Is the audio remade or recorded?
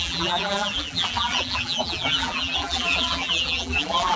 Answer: remade